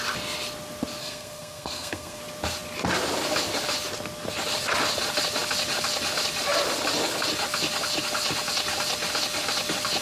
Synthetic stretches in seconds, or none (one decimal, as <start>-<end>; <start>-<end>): 1.0-2.2